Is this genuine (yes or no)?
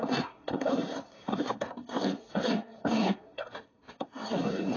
no